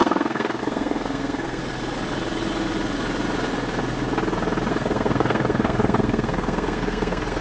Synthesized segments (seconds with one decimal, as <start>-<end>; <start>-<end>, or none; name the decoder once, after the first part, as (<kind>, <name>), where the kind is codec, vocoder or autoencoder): 0.0-1.6 (codec, SNAC); 4.7-7.4